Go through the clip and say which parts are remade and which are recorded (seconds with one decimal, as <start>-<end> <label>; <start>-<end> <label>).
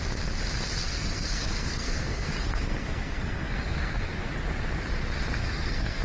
0.0-0.7 recorded; 0.7-4.3 remade; 4.3-5.4 recorded; 5.4-6.0 remade